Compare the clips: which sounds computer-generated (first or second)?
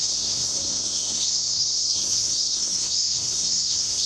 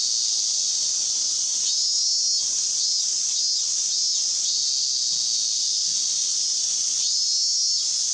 first